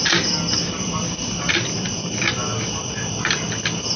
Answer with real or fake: real